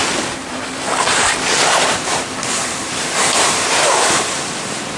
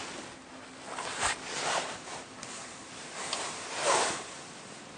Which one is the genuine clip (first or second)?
second